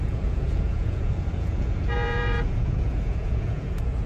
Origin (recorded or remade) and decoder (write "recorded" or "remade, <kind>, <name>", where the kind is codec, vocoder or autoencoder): remade, vocoder, Vocos